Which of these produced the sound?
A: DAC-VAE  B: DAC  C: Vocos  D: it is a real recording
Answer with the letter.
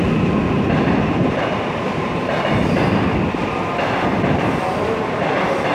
D